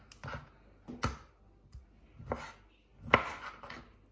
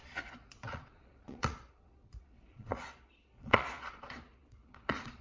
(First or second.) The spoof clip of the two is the second